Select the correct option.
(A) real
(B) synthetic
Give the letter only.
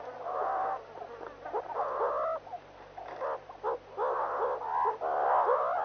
A